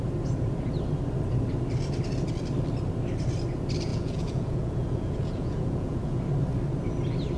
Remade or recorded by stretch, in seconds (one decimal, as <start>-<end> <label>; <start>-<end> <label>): 0.0-3.9 recorded; 3.9-6.2 remade; 6.2-7.4 recorded